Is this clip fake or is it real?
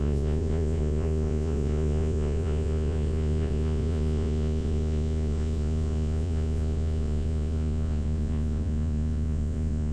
fake